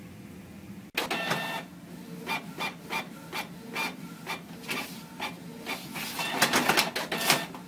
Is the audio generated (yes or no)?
no